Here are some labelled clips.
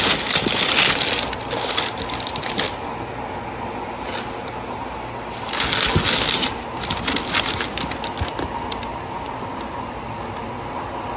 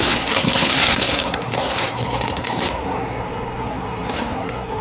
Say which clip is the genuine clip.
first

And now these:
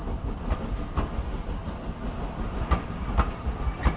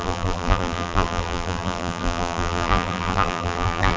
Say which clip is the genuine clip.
first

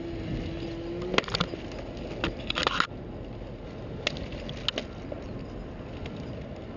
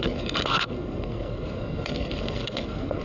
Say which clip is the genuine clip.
first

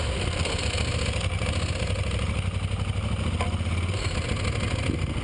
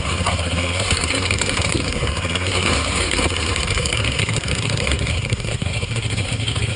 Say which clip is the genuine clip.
first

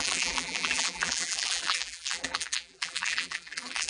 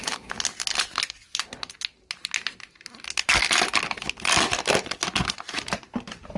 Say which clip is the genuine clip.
second